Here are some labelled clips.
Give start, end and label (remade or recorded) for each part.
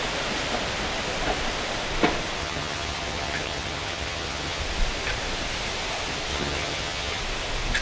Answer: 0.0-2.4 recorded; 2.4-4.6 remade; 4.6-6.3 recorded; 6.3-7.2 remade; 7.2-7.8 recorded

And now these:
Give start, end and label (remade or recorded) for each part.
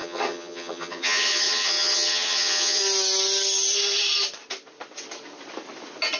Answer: 0.0-2.8 remade; 2.8-6.2 recorded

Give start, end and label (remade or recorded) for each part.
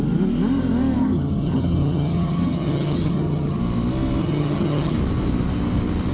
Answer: 0.0-1.0 recorded; 1.0-3.6 remade; 3.6-4.2 recorded; 4.2-4.9 remade; 4.9-6.1 recorded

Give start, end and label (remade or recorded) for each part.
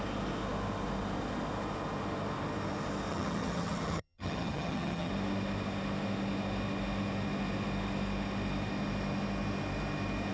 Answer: 0.0-3.1 recorded; 3.1-5.1 remade; 5.1-10.3 recorded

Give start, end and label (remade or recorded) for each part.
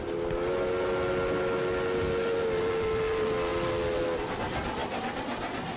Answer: 0.0-5.8 recorded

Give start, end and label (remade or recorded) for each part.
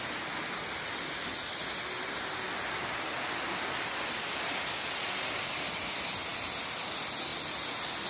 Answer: 0.0-8.1 recorded